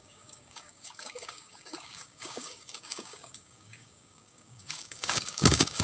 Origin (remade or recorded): remade